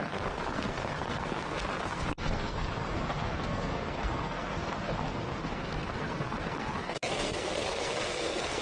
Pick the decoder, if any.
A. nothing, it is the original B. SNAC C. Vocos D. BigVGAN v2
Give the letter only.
B